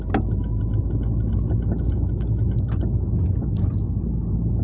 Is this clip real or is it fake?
real